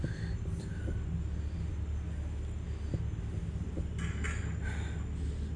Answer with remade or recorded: recorded